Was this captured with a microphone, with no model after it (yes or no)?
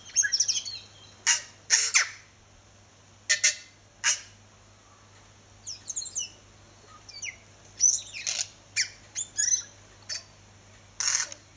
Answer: yes